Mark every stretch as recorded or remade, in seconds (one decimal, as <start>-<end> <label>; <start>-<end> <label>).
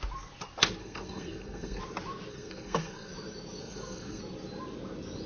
0.0-0.8 recorded; 0.8-1.8 remade; 1.8-2.3 recorded; 2.3-3.1 remade; 3.1-3.6 recorded; 3.6-4.2 remade; 4.2-5.3 recorded